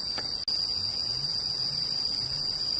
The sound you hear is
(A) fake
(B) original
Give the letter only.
B